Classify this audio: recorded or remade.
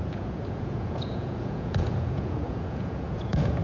remade